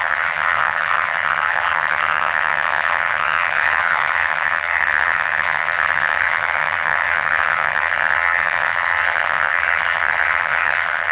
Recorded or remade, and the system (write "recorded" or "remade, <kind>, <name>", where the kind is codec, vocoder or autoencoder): remade, vocoder, HiFi-GAN